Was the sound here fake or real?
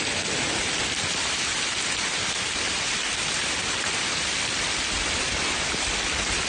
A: fake